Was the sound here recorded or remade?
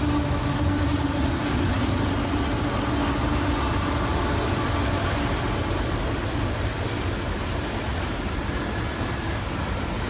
recorded